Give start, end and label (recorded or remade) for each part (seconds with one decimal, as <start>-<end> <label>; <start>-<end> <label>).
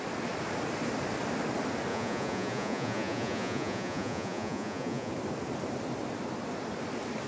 0.0-1.9 recorded; 1.9-5.1 remade; 5.1-7.3 recorded